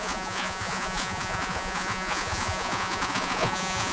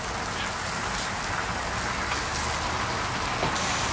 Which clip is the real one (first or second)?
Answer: second